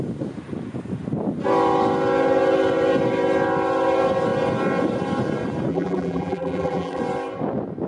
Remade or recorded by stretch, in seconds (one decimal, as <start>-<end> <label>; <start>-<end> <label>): 0.0-5.7 recorded; 5.7-7.0 remade; 7.0-7.9 recorded

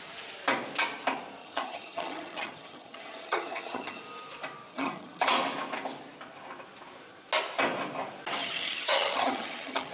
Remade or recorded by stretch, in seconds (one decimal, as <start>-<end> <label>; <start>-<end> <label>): 0.0-1.4 recorded; 1.4-4.0 remade; 4.0-4.7 recorded; 4.7-5.3 remade; 5.3-8.4 recorded; 8.4-9.9 remade

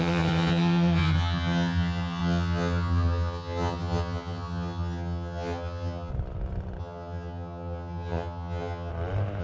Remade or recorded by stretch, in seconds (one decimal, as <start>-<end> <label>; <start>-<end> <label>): 0.0-6.1 remade; 6.1-6.8 recorded; 6.8-8.9 remade; 8.9-9.4 recorded

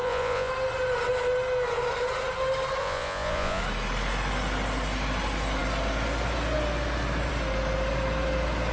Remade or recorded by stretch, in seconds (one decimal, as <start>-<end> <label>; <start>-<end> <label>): 0.0-0.5 remade; 0.5-2.8 recorded; 2.8-3.6 remade; 3.6-8.7 recorded

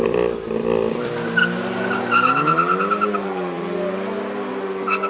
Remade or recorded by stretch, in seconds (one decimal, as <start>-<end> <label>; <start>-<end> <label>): 0.0-5.1 recorded

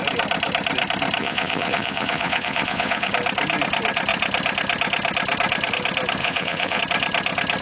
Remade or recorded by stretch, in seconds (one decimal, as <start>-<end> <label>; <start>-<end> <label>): 0.0-1.2 recorded; 1.2-3.1 remade; 3.1-6.2 recorded; 6.2-6.8 remade; 6.8-7.6 recorded